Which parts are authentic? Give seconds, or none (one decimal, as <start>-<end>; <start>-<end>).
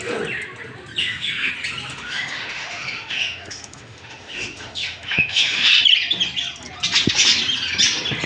0.0-1.0; 1.5-1.9; 5.7-8.3